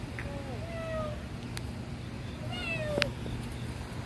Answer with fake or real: real